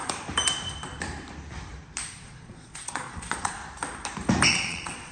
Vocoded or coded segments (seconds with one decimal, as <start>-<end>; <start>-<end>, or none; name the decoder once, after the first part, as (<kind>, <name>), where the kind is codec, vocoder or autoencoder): 2.1-3.6 (vocoder, Vocos); 4.5-5.1